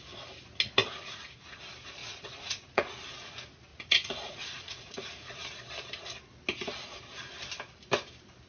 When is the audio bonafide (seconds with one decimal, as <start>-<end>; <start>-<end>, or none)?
0.0-0.8; 1.6-2.0; 2.9-3.7; 5.4-8.5